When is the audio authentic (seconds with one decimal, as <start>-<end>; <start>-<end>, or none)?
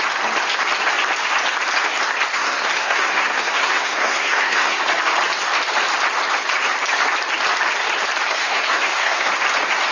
0.0-2.3; 4.8-8.3; 9.3-9.9